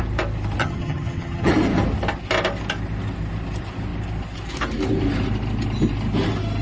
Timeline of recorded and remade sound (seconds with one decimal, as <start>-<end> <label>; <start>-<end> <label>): 0.0-0.6 recorded; 0.6-1.5 remade; 1.5-6.6 recorded